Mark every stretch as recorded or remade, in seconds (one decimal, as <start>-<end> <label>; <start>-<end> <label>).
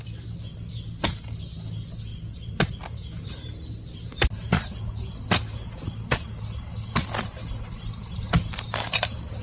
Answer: 0.0-2.1 recorded; 2.1-4.8 remade; 4.8-9.4 recorded